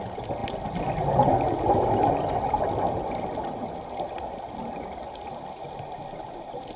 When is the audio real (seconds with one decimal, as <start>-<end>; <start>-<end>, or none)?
0.0-6.8